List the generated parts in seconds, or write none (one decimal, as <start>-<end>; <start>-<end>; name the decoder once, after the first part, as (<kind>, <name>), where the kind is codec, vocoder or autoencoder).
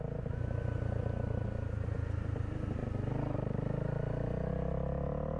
none